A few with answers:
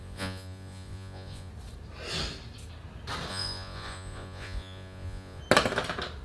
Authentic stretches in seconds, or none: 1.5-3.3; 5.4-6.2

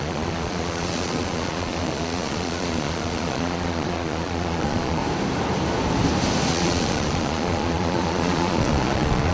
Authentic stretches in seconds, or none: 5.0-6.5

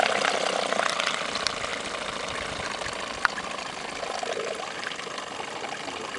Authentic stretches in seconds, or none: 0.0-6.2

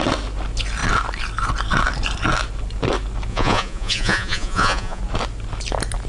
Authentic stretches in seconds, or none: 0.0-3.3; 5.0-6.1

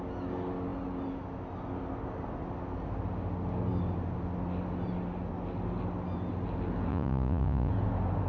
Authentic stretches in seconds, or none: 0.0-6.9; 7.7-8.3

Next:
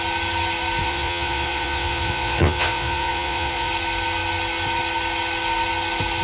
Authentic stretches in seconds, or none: 0.0-0.8; 3.7-6.2